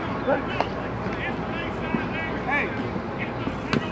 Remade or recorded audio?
recorded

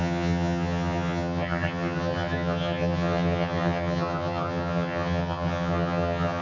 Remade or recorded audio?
remade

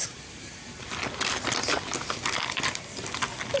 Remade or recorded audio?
recorded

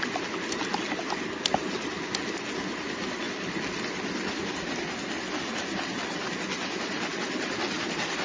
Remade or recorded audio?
recorded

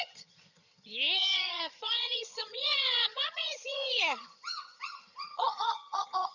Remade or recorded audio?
remade